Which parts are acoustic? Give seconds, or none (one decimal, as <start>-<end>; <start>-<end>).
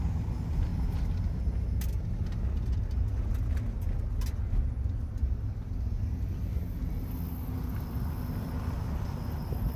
0.0-9.8